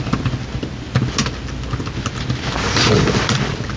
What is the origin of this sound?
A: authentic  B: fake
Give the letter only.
A